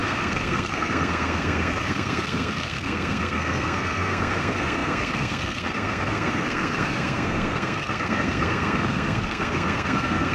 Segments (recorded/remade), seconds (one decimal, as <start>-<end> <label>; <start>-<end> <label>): 0.0-10.3 remade